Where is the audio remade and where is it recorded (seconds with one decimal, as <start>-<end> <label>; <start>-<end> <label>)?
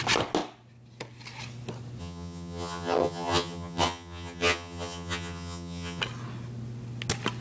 0.0-2.0 recorded; 2.0-6.0 remade; 6.0-7.4 recorded